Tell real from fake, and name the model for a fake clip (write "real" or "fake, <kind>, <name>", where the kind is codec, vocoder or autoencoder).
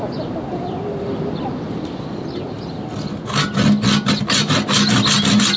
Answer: real